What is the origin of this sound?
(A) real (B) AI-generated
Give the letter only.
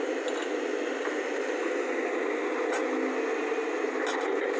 A